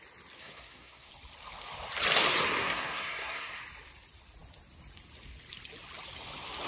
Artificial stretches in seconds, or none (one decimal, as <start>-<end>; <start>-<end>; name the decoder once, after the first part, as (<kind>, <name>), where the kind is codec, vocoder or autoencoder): 0.4-1.1 (codec, SNAC); 2.6-3.6